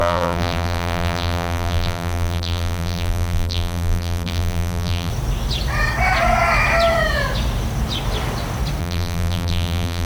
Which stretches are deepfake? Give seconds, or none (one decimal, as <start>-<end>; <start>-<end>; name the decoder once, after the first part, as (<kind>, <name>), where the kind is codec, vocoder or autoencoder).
0.0-5.1 (vocoder, BigVGAN v2); 8.8-10.1